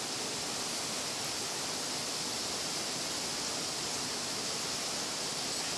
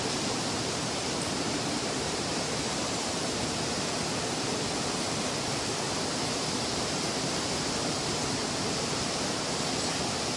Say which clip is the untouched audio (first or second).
first